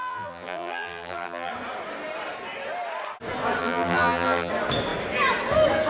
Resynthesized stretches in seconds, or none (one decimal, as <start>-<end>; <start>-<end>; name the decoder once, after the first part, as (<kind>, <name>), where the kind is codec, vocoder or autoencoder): 0.0-1.5 (vocoder, BigVGAN v2); 3.6-4.5